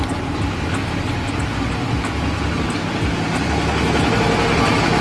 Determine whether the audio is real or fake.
real